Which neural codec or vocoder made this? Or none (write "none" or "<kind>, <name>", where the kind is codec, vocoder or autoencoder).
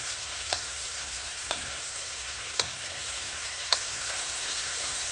codec, SNAC